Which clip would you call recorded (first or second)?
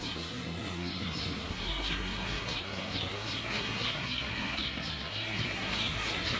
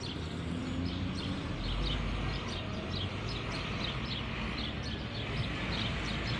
second